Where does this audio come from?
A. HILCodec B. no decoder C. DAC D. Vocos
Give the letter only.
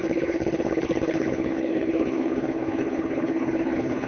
A